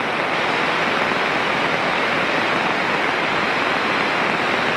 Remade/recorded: remade